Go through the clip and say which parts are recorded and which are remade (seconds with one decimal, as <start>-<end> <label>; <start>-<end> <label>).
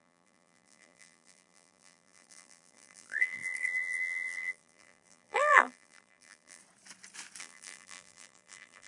0.0-6.6 remade; 6.6-7.4 recorded; 7.4-8.9 remade